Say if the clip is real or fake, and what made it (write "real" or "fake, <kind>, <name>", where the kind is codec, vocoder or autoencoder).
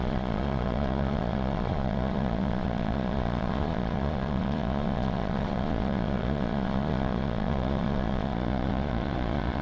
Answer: fake, vocoder, Vocos